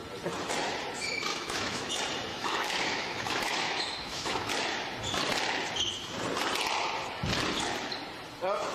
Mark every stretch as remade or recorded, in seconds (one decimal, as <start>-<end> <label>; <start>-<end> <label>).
0.0-1.3 recorded; 1.3-1.9 remade; 1.9-2.3 recorded; 2.3-4.5 remade; 4.5-8.7 recorded